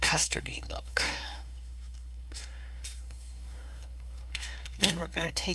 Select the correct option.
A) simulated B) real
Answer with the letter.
A